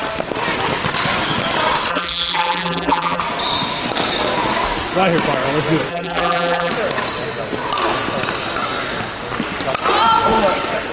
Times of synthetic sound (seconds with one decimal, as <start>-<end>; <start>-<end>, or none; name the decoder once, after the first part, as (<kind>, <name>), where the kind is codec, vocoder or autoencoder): 1.9-3.2 (vocoder, BigVGAN v2); 5.9-6.7